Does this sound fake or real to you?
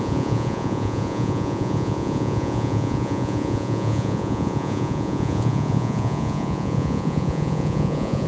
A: fake